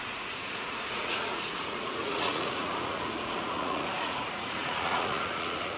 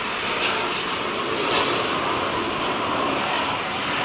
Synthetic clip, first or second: first